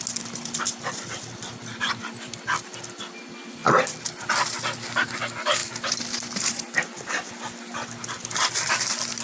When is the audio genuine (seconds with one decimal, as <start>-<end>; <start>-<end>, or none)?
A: 0.0-1.7; 2.8-5.6; 7.3-9.2